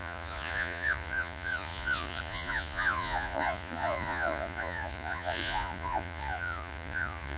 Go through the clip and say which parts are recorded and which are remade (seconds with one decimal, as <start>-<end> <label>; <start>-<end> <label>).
0.0-7.4 remade